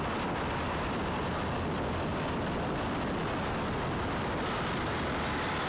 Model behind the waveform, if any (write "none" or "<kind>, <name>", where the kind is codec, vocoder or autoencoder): none